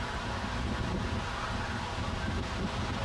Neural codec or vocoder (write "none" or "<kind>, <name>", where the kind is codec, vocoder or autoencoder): none